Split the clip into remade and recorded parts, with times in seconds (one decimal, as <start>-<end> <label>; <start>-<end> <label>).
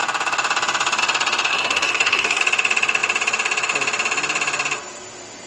0.0-1.5 recorded; 1.5-2.4 remade; 2.4-5.5 recorded